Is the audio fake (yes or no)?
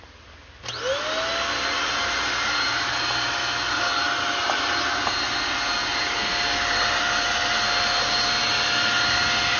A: no